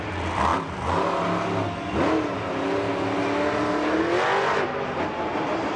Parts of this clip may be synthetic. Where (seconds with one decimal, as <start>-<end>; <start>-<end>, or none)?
none